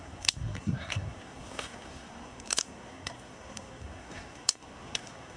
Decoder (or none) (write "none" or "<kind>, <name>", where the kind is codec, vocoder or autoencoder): codec, SNAC